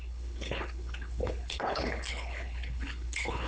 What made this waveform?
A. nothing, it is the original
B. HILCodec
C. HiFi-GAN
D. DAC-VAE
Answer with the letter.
B